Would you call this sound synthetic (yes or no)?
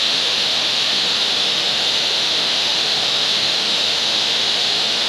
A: yes